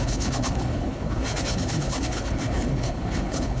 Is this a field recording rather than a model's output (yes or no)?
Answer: no